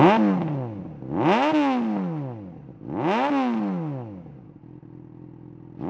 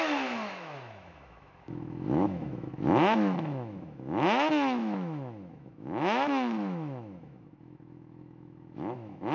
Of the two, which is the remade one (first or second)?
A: second